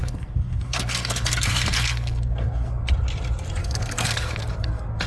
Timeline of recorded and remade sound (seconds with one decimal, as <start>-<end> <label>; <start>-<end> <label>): 0.0-2.9 remade; 2.9-3.6 recorded; 3.6-5.1 remade